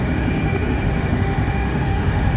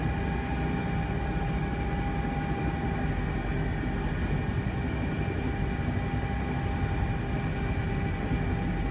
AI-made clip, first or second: first